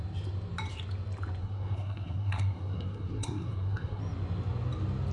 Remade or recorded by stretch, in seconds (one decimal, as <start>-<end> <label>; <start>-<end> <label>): 0.0-1.4 recorded; 1.4-4.0 remade; 4.0-5.1 recorded